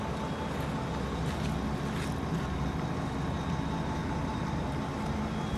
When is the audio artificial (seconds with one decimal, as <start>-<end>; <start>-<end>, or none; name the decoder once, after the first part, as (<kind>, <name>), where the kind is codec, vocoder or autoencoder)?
4.0-4.6 (vocoder, BigVGAN v2)